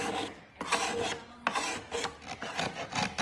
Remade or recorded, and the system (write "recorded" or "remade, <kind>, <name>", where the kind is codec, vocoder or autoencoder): recorded